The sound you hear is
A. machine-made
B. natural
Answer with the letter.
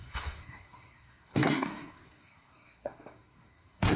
A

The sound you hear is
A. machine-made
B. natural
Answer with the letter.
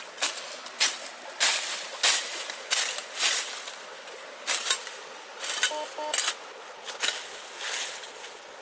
B